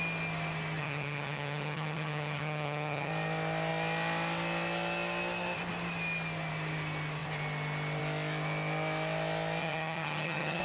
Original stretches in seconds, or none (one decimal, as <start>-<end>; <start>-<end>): 0.0-0.8; 3.1-9.6